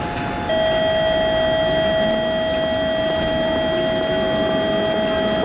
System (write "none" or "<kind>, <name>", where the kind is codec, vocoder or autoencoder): none